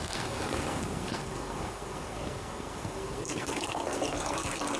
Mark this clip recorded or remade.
remade